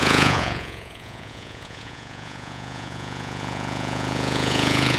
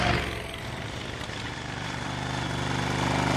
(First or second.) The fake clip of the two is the first